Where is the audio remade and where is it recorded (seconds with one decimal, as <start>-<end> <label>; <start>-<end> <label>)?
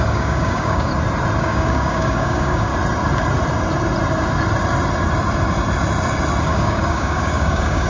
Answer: 0.0-0.9 remade; 0.9-1.4 recorded; 1.4-2.7 remade; 2.7-6.4 recorded; 6.4-7.9 remade